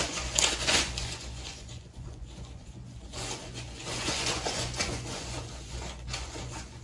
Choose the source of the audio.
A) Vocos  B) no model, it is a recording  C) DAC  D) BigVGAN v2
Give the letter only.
A